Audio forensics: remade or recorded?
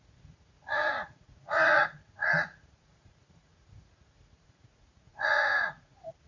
remade